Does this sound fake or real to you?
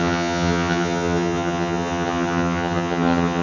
fake